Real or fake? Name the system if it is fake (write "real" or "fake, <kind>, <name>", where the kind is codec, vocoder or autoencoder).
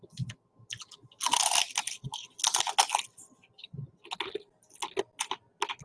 real